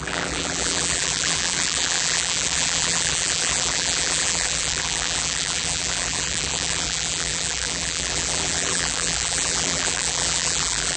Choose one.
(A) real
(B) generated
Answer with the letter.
B